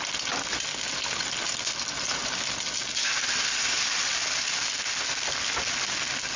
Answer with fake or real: real